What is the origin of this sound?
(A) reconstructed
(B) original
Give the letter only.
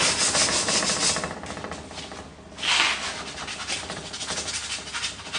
B